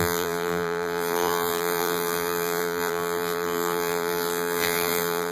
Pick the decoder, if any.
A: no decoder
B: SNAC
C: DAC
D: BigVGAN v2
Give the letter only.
D